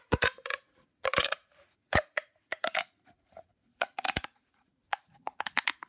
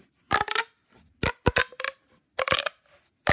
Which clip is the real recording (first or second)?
second